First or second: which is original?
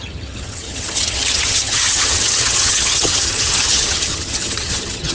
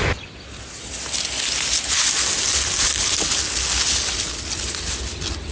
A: second